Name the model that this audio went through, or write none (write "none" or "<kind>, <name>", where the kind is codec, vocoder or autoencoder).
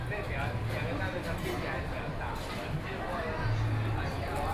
none